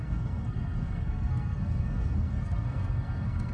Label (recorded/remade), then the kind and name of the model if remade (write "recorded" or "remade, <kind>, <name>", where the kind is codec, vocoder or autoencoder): remade, codec, SNAC